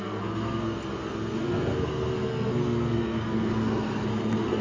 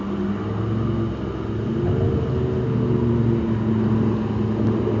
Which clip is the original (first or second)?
second